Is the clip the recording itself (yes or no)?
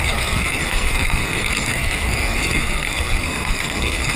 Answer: no